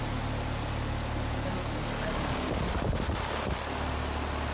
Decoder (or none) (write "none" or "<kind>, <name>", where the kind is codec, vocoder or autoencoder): none